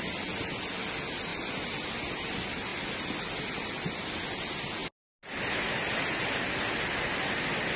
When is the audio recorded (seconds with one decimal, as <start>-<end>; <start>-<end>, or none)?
0.0-1.3; 1.9-7.8